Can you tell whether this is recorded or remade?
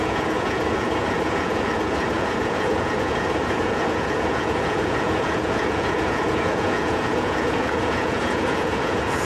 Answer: remade